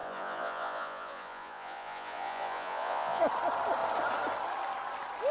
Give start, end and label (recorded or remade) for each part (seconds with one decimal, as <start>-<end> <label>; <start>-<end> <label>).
0.0-3.2 remade; 3.2-5.3 recorded